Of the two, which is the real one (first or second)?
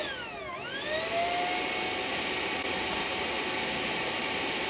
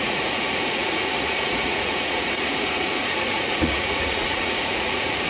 first